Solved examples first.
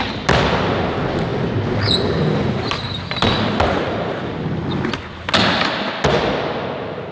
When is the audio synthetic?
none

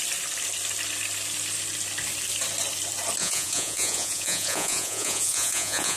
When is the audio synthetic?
3.2-6.0

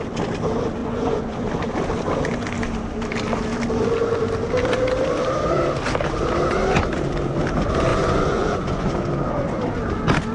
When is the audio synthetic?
0.8-1.5; 7.9-8.9

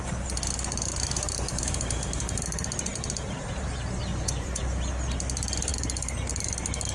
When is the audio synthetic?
4.1-4.6